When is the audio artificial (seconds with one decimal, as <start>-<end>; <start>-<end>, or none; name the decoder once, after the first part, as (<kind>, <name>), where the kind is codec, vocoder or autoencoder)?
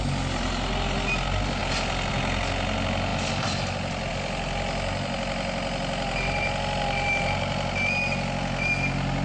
none